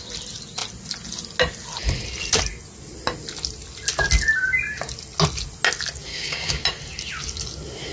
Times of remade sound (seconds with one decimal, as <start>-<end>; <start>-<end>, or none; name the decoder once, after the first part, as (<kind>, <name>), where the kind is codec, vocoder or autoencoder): 6.1-6.6 (codec, DAC)